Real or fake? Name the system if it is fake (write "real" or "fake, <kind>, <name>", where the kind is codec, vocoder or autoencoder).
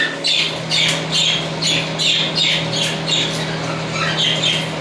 real